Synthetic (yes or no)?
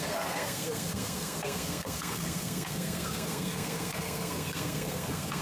yes